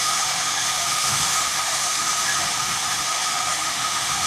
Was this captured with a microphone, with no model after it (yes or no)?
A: no